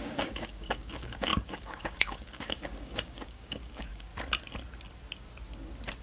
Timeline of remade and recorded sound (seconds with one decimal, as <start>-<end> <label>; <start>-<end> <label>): 0.0-4.1 remade; 4.1-6.0 recorded